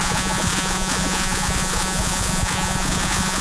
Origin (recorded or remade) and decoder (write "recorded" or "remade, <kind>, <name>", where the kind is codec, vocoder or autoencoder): remade, vocoder, Vocos